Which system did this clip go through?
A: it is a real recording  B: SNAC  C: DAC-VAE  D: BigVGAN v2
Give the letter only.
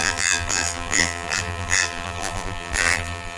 D